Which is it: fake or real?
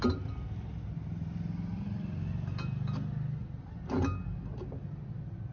real